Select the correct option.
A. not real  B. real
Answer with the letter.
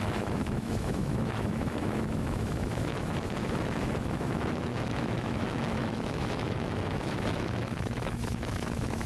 A